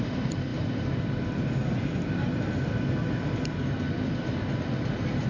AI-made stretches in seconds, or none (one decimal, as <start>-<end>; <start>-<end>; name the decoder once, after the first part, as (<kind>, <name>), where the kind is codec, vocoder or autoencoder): none